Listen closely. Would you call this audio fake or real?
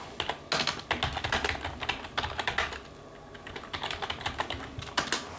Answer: real